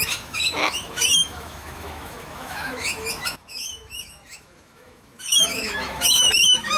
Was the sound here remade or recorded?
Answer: remade